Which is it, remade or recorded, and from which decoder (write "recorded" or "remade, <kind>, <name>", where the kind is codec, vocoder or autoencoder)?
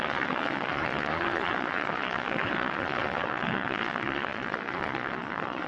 remade, vocoder, Vocos